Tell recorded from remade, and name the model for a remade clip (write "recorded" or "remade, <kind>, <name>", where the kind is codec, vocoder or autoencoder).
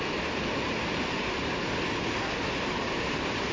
recorded